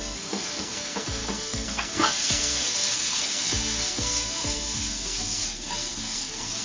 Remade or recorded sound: remade